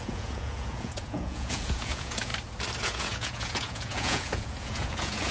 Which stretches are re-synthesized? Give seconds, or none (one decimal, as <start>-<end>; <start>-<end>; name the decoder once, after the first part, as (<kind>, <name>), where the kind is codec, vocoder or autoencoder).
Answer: 0.0-2.3 (vocoder, Vocos); 2.8-5.3